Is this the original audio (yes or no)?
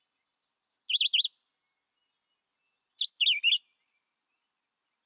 yes